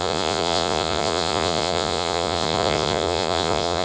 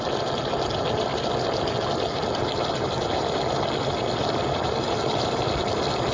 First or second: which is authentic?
second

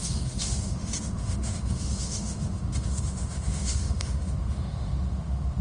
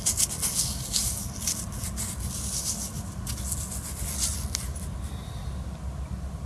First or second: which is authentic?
second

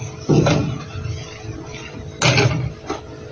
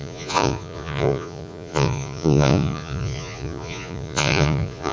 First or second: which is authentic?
first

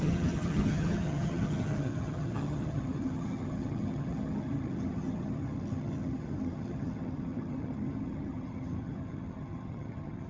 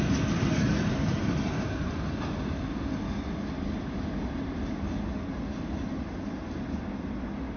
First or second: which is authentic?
second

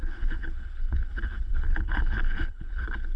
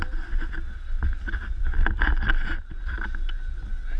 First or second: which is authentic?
second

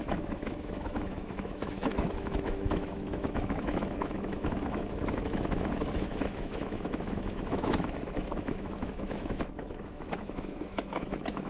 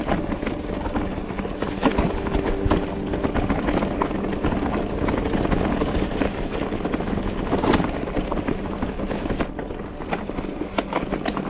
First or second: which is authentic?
second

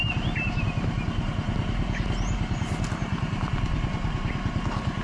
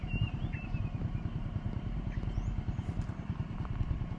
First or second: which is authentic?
first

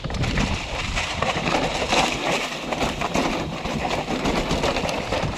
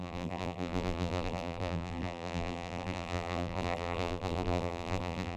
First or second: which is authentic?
first